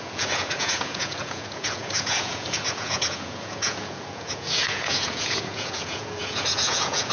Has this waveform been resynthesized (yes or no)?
yes